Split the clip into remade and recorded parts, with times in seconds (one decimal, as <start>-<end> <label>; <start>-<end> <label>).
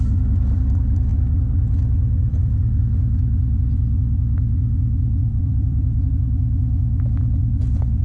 0.0-1.1 recorded; 1.1-2.8 remade; 2.8-5.3 recorded; 5.3-6.1 remade; 6.1-8.0 recorded